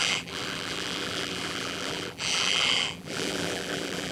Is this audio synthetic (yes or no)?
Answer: yes